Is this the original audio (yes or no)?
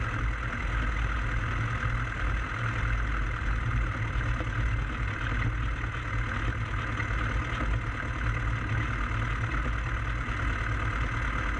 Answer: yes